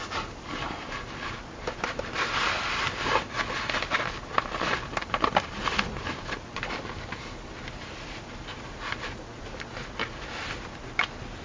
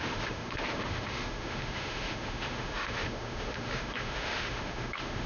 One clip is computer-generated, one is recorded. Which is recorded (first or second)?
first